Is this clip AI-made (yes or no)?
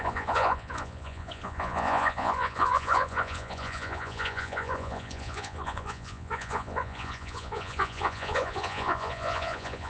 yes